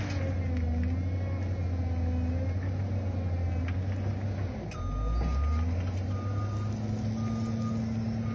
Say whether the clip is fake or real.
real